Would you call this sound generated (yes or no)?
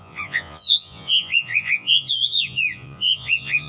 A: yes